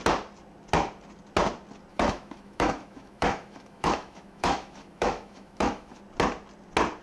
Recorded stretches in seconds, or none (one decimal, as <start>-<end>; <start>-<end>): 0.0-1.9; 6.0-7.0